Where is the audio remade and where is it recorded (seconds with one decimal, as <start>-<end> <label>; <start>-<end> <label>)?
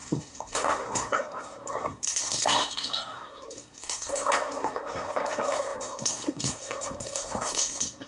0.0-8.1 remade